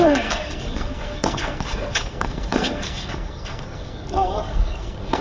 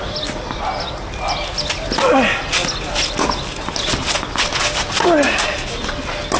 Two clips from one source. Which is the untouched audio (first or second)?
second